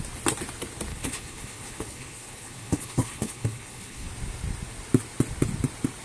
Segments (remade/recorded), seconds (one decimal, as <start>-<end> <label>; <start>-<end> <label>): 0.0-0.9 recorded; 0.9-4.1 remade; 4.1-6.0 recorded